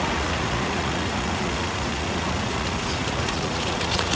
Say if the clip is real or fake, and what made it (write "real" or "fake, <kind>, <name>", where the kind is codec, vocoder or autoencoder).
fake, vocoder, Vocos